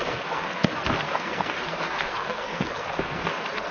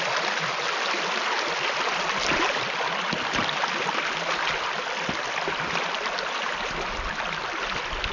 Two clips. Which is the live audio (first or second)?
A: second